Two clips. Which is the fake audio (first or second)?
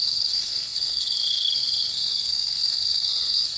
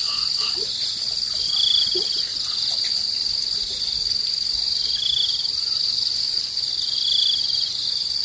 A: first